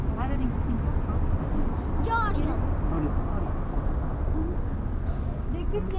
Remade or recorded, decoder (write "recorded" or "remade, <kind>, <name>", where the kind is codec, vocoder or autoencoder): recorded